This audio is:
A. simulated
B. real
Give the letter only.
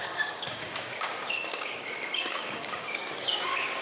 A